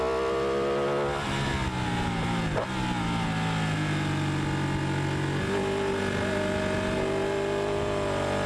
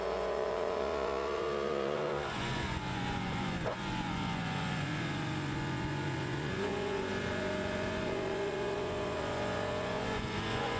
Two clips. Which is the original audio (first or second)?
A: first